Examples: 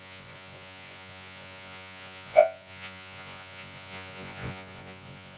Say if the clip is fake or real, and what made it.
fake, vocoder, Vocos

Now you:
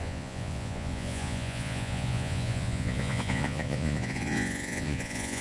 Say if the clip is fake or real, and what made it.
fake, vocoder, Vocos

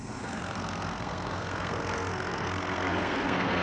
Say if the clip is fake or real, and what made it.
fake, codec, SNAC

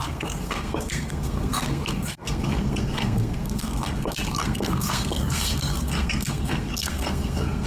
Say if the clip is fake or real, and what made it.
fake, codec, SNAC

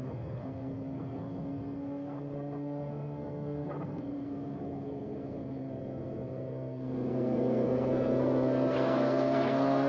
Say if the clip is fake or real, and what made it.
fake, codec, SNAC